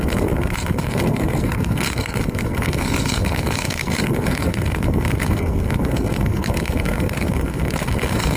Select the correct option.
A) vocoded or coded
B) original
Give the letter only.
A